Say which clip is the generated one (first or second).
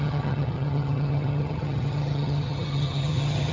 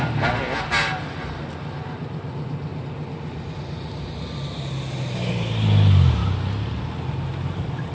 first